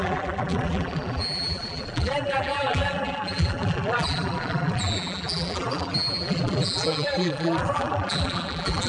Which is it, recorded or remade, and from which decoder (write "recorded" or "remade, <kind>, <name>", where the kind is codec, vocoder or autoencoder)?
remade, vocoder, BigVGAN v2